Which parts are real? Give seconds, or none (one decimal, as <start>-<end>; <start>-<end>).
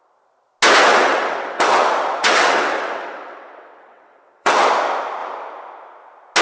0.0-0.9; 4.7-6.4